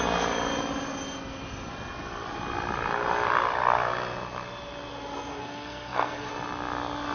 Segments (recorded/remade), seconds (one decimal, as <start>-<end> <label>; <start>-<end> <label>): 0.0-5.3 recorded; 5.3-6.3 remade; 6.3-7.1 recorded